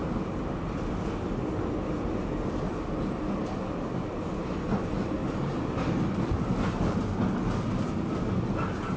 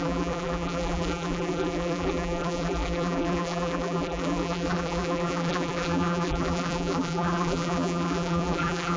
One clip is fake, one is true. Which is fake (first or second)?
second